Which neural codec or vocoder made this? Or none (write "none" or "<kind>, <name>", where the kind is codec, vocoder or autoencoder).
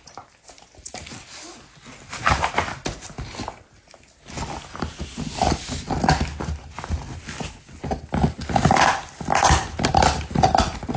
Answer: none